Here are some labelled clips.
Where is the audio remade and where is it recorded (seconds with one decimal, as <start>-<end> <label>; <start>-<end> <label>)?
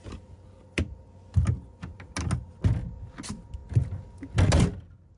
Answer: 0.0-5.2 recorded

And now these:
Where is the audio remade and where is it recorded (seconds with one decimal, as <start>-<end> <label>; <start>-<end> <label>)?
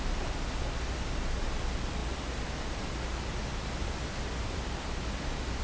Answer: 0.0-5.6 recorded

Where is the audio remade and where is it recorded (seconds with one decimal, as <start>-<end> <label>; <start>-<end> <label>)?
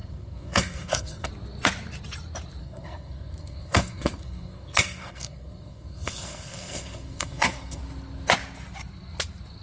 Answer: 0.0-1.3 remade; 1.3-2.6 recorded; 2.6-7.8 remade; 7.8-9.6 recorded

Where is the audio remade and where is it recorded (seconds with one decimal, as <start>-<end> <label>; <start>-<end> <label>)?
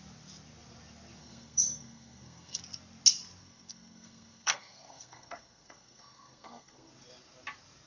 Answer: 0.0-1.2 recorded; 1.2-2.6 remade; 2.6-3.4 recorded; 3.4-6.9 remade; 6.9-7.9 recorded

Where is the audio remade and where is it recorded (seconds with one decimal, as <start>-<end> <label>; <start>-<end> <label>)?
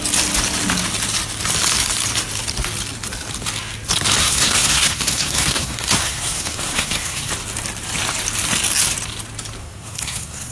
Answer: 0.0-4.2 recorded; 4.2-7.3 remade; 7.3-9.6 recorded; 9.6-10.5 remade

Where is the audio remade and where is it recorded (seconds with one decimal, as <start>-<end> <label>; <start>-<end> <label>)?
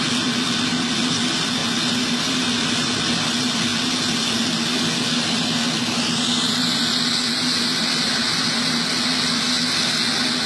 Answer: 0.0-10.5 recorded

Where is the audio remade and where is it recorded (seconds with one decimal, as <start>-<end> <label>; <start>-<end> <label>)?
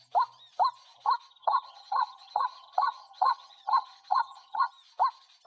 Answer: 0.0-1.4 recorded; 1.4-4.7 remade; 4.7-5.5 recorded